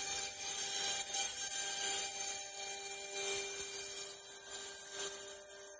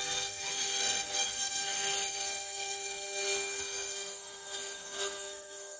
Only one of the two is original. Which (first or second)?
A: first